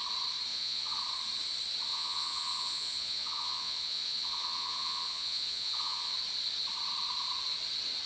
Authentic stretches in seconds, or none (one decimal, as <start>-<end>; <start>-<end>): 0.0-0.5; 1.0-1.9; 6.1-8.1